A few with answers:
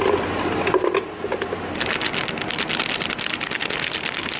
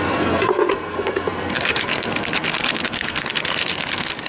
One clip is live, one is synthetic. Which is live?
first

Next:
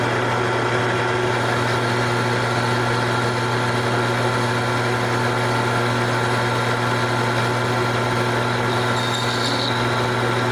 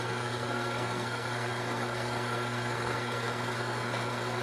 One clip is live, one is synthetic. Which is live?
first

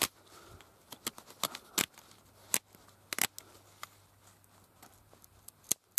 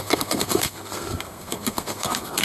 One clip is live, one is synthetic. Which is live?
first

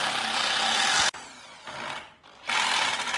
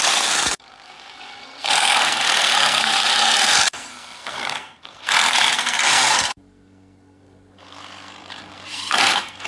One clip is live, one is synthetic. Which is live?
first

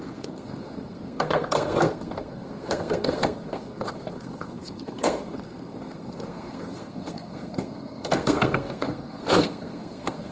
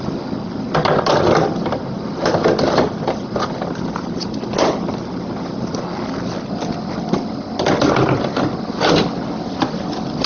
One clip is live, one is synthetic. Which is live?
second